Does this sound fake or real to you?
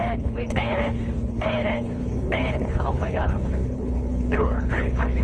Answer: fake